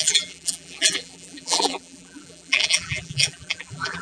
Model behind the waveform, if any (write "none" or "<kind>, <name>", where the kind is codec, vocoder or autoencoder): vocoder, BigVGAN v2